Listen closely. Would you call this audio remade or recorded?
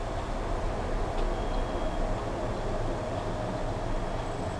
recorded